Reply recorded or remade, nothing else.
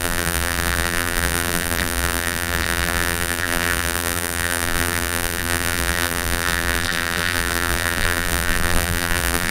remade